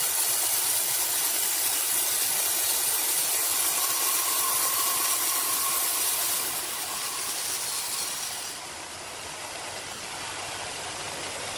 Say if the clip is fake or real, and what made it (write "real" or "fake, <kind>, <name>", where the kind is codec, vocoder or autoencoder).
real